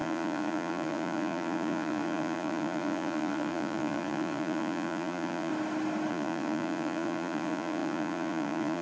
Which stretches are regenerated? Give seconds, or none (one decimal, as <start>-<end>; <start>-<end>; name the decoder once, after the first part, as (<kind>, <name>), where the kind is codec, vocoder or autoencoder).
0.0-5.5 (vocoder, Vocos); 6.1-8.8